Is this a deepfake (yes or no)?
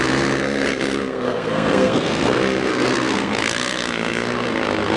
yes